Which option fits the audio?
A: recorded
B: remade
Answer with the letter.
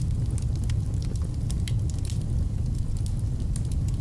A